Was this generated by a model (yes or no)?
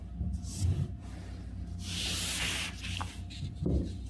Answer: no